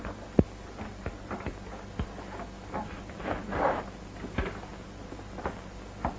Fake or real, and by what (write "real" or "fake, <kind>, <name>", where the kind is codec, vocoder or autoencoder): real